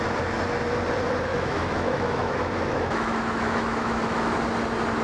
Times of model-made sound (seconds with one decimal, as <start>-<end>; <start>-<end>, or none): 1.3-4.3